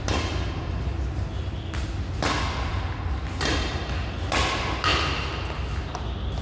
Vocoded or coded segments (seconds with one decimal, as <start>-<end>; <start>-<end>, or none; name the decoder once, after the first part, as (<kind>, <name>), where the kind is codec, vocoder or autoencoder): none